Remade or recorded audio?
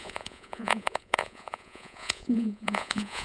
remade